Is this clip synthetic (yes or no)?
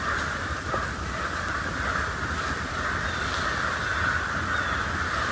no